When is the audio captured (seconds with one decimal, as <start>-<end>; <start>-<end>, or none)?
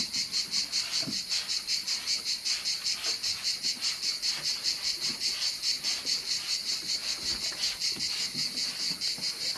0.0-9.6